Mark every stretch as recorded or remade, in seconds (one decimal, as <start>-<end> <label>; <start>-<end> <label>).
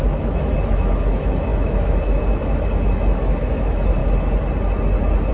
0.0-4.0 remade; 4.0-5.3 recorded